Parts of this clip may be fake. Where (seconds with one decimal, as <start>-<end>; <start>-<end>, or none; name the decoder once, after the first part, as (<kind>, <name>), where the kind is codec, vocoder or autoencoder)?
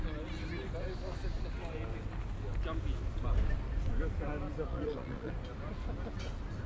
4.7-5.3 (vocoder, Vocos)